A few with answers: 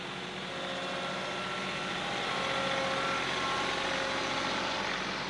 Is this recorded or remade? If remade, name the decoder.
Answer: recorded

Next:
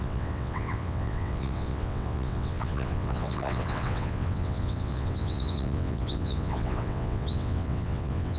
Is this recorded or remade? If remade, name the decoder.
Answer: remade, vocoder, WaveNeXt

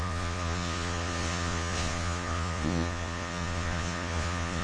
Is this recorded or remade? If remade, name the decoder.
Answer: remade, vocoder, Vocos